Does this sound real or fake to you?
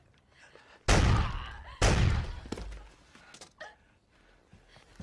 real